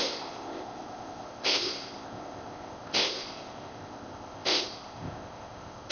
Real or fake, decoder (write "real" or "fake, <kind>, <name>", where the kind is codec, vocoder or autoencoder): fake, codec, ZipCodec